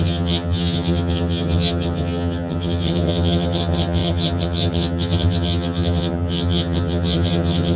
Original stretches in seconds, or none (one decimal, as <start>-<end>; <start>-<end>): none